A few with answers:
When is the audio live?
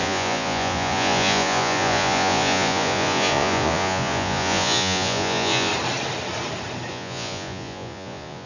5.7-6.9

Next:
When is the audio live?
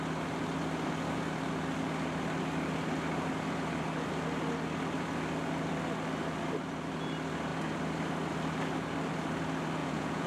0.0-9.8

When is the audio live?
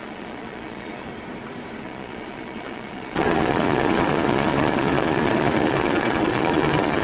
1.1-1.8